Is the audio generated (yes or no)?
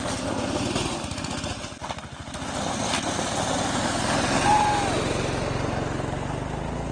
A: no